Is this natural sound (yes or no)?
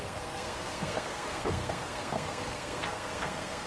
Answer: no